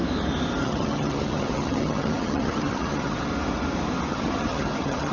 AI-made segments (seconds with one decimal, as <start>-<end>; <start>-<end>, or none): 0.6-3.3; 4.1-5.1